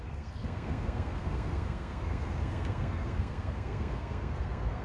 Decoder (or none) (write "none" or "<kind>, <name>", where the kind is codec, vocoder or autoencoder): codec, SNAC